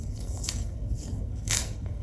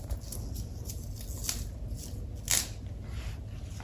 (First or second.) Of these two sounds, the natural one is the second